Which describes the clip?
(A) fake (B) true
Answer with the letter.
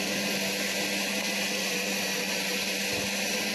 B